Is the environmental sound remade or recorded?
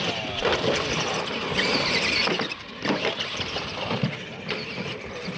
remade